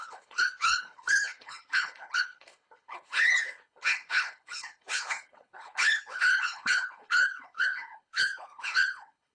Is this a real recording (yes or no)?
no